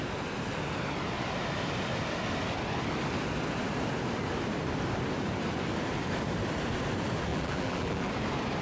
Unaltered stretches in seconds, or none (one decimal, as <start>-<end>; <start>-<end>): 0.0-7.3; 8.1-8.6